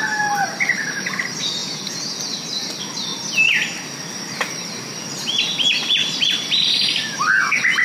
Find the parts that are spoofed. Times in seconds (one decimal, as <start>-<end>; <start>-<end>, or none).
1.6-2.2